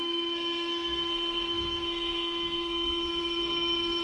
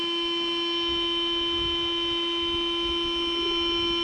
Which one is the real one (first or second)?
second